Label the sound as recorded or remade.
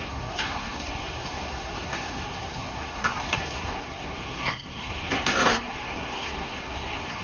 remade